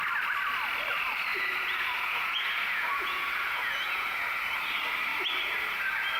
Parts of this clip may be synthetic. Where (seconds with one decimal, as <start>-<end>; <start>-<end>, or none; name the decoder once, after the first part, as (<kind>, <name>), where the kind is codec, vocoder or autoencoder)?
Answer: 1.3-4.4 (vocoder, Vocos)